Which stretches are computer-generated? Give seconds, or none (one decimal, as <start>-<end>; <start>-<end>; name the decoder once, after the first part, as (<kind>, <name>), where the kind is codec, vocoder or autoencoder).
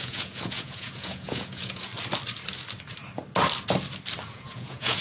0.0-1.9 (vocoder, Vocos); 4.3-5.0